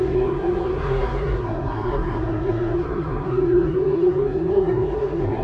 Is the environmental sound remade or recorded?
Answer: remade